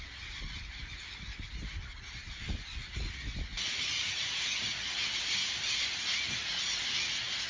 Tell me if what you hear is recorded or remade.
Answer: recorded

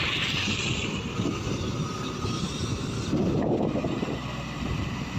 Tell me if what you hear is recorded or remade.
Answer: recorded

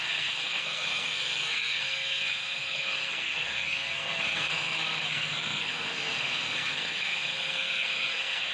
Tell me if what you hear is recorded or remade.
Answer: remade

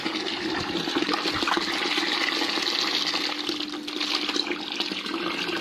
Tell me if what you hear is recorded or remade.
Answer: recorded